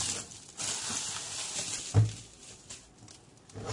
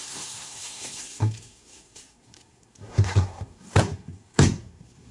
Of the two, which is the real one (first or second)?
first